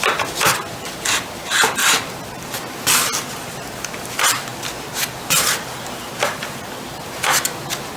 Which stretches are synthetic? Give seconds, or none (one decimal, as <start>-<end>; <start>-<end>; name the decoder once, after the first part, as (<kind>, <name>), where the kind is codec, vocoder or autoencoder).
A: none